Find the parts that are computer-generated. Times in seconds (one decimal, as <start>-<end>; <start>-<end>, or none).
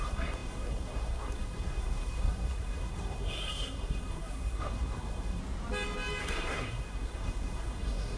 0.0-5.4; 6.2-8.2